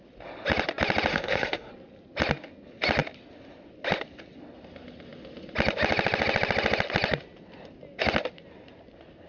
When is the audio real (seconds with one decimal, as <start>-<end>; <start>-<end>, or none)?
0.0-1.1; 1.7-9.3